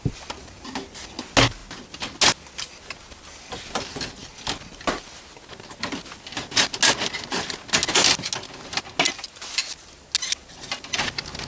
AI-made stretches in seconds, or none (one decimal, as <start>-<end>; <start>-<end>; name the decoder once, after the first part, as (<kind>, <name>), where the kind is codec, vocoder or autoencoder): none